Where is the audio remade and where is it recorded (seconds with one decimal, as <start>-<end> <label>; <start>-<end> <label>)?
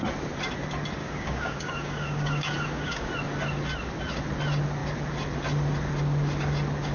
0.0-1.0 recorded; 1.0-3.1 remade; 3.1-6.9 recorded